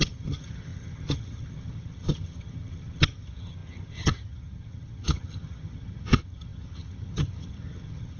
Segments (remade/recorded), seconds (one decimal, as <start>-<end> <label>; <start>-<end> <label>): 0.0-8.2 remade